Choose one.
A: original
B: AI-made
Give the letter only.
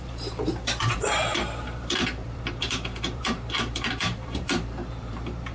B